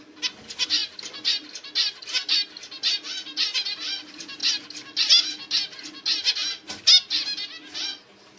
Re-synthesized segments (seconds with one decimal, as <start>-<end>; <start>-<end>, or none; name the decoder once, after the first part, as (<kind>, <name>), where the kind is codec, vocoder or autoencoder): none